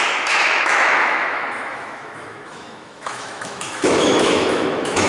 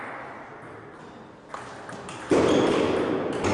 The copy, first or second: first